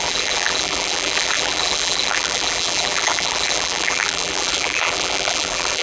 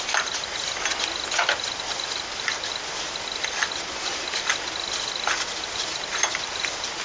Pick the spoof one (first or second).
first